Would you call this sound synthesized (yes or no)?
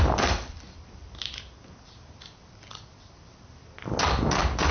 no